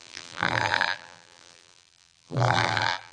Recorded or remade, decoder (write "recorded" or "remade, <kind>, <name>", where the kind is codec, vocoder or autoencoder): remade, vocoder, BigVGAN v2